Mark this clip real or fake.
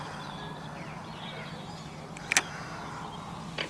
real